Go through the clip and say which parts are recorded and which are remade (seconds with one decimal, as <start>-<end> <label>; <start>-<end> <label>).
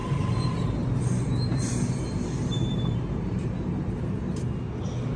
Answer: 0.0-1.0 remade; 1.0-1.5 recorded; 1.5-4.0 remade; 4.0-5.2 recorded